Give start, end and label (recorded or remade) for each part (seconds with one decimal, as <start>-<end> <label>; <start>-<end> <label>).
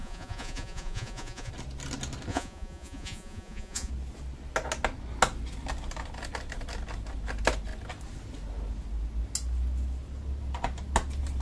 0.0-1.5 remade; 1.5-2.3 recorded; 2.3-3.9 remade; 3.9-11.4 recorded